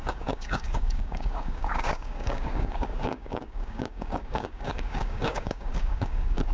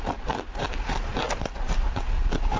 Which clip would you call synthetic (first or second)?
first